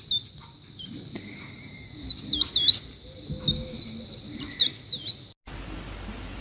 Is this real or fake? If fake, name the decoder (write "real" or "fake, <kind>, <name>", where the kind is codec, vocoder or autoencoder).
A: real